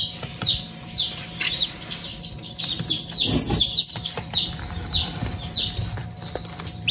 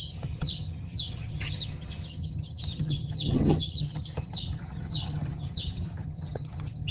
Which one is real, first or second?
first